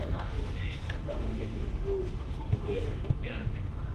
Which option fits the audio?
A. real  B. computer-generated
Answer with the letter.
B